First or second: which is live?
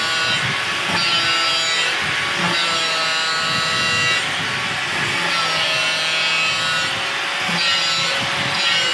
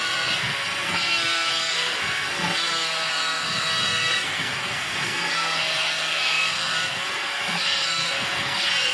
first